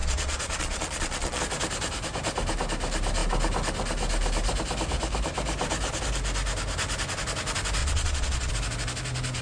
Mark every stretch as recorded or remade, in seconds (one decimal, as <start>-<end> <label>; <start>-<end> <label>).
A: 0.0-1.4 remade; 1.4-7.8 recorded; 7.8-8.5 remade; 8.5-9.4 recorded